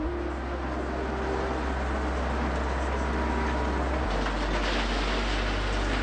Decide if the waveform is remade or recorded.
recorded